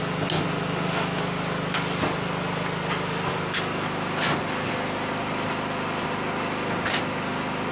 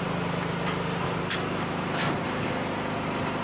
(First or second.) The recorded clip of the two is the first